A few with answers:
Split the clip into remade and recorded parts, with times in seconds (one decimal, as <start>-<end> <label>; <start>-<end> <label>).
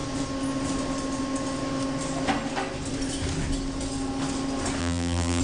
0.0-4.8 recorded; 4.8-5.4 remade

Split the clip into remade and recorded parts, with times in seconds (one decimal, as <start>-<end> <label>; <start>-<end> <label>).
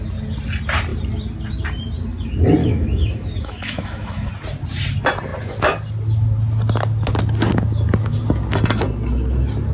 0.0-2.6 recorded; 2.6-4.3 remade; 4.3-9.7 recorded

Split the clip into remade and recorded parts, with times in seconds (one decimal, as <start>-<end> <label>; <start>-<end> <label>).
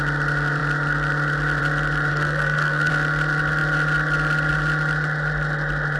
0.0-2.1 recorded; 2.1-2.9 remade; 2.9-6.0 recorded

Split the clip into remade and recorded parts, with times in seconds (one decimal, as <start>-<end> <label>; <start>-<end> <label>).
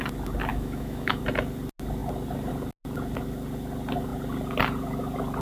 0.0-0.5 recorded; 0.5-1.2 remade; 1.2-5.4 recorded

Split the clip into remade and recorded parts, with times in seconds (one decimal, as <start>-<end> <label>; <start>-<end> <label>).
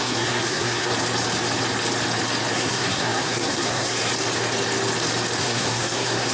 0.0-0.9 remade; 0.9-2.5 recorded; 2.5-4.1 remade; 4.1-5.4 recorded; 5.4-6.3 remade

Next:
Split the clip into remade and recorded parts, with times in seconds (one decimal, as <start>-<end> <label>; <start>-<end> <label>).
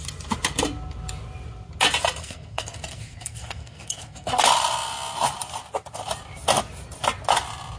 0.0-2.2 recorded; 2.2-4.3 remade; 4.3-7.8 recorded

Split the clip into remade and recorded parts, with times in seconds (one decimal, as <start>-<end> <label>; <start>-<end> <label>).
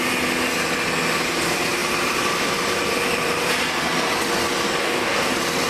0.0-4.8 recorded; 4.8-5.3 remade; 5.3-5.7 recorded